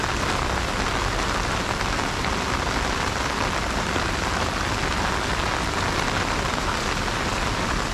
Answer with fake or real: real